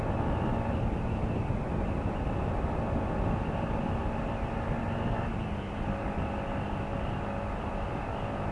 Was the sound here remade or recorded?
recorded